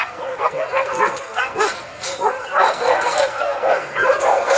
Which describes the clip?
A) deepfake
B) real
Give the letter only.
A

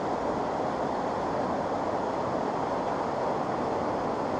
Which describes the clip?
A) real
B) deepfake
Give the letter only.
A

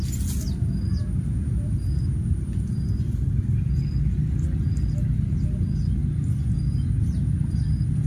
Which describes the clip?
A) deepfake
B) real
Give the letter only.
B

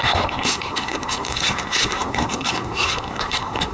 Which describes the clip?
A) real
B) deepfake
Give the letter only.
B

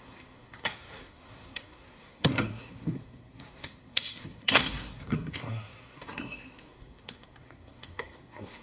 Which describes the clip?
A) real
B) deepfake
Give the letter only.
B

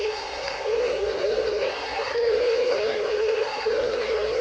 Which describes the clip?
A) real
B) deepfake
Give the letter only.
B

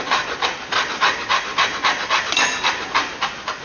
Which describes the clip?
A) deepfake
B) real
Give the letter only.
B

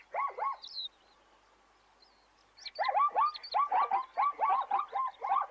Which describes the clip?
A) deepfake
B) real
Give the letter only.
B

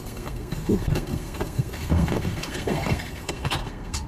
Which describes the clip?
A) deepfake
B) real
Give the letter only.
A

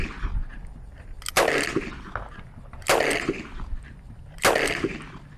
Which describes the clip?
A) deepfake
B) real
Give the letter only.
B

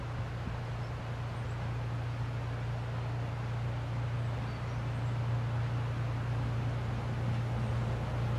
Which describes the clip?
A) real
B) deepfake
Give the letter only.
A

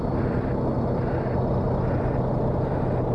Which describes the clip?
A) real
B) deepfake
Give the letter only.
A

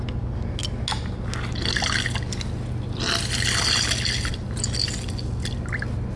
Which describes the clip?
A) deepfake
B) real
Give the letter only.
B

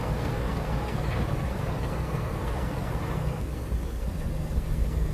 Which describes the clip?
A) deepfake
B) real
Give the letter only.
A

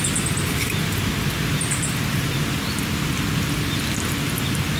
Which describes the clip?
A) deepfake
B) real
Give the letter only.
B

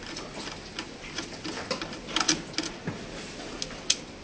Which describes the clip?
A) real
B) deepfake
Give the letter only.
A